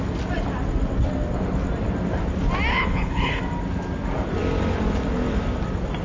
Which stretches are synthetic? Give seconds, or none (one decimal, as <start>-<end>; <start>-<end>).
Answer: 2.7-3.4